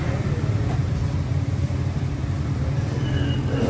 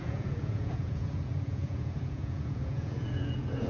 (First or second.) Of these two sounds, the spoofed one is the second